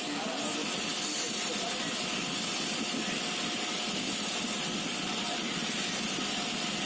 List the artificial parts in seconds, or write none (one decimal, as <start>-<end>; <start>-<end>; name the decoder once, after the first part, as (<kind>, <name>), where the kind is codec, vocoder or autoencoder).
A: none